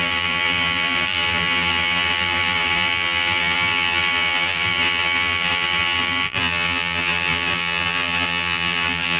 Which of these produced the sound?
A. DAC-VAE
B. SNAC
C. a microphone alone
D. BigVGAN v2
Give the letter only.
D